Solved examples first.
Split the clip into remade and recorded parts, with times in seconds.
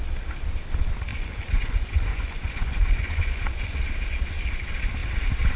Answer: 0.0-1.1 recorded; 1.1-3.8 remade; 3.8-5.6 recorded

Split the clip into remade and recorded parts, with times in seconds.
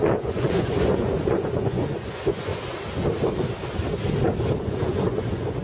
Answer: 0.0-2.5 remade; 2.5-4.6 recorded; 4.6-5.6 remade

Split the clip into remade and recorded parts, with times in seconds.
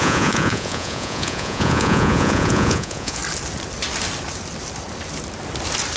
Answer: 0.0-3.2 remade; 3.2-6.0 recorded